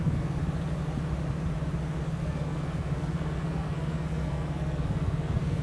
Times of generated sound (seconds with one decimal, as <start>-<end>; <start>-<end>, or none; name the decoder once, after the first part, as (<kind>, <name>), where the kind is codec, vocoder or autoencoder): 0.0-0.4 (codec, SNAC); 2.1-5.6